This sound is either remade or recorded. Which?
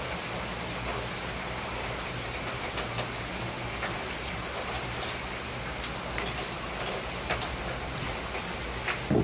recorded